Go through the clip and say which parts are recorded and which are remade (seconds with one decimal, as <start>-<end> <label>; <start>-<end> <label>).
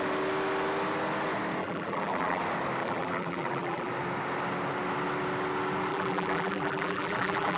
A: 0.0-1.6 recorded; 1.6-2.4 remade; 2.4-2.8 recorded; 2.8-3.9 remade; 3.9-5.9 recorded; 5.9-7.6 remade